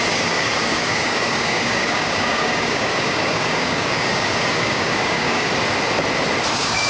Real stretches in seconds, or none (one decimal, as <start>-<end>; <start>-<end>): 5.5-6.5